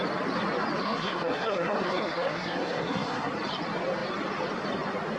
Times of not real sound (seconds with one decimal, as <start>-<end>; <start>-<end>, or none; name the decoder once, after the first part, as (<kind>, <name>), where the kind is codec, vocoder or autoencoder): 0.8-3.3 (codec, SNAC)

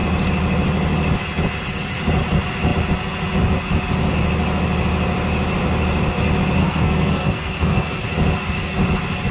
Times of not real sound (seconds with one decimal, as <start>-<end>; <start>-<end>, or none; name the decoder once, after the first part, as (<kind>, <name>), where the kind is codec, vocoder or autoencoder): 6.6-8.0 (codec, SNAC)

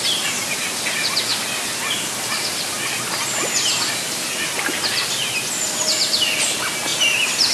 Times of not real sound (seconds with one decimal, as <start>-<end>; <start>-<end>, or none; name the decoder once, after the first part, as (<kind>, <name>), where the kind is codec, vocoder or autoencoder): none

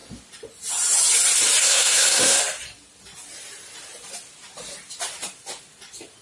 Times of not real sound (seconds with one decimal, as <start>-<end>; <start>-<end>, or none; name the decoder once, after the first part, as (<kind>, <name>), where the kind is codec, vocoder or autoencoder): 1.6-2.4 (codec, SNAC)

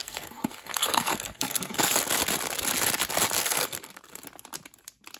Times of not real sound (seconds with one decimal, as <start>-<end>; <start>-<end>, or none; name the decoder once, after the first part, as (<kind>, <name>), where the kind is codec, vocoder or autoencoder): 0.0-2.0 (codec, SNAC); 3.4-4.2

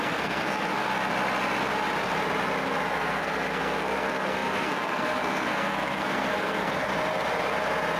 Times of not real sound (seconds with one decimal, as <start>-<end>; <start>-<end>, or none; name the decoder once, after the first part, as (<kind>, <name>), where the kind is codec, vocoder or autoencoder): 0.0-0.9 (codec, SNAC); 2.9-6.9

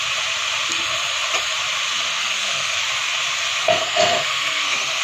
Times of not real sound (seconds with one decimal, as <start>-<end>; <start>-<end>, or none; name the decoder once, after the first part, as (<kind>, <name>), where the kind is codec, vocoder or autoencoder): 2.2-2.8 (codec, SNAC); 3.6-5.0